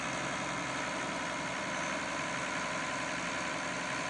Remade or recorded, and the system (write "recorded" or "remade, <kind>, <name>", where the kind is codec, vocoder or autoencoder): recorded